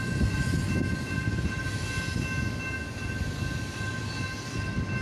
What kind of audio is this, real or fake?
real